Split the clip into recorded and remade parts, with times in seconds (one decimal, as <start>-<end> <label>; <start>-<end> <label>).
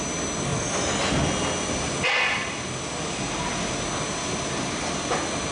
0.0-5.5 recorded